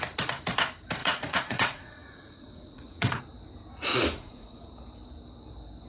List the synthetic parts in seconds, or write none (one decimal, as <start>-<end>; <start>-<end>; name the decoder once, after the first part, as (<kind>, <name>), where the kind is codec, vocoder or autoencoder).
1.0-3.2 (vocoder, Vocos); 3.9-4.7